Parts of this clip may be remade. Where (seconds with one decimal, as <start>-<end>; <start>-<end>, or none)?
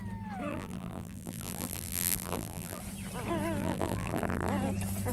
0.5-2.8; 3.6-4.5